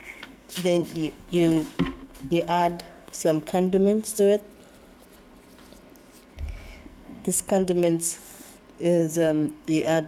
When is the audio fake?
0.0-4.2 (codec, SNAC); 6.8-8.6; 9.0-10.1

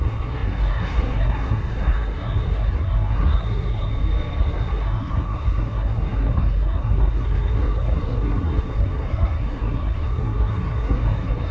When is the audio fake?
0.0-3.9 (codec, SNAC); 4.4-11.5

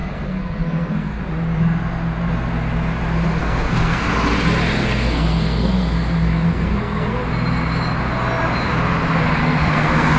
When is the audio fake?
0.0-1.2 (codec, SNAC); 3.4-4.0; 4.8-7.2; 9.4-10.2

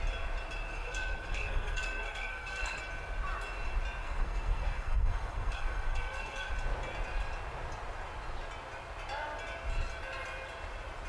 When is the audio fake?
0.7-2.8 (codec, SNAC); 4.0-6.5

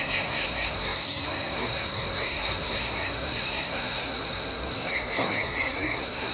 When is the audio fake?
0.0-6.3 (codec, SNAC)

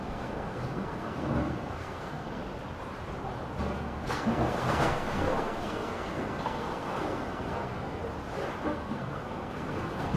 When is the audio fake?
0.0-2.4 (codec, SNAC); 3.6-8.0; 8.6-10.2